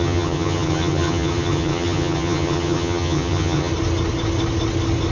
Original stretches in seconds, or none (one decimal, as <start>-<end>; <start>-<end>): 3.7-5.1